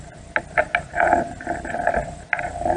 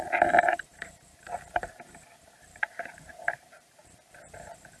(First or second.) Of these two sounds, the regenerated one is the second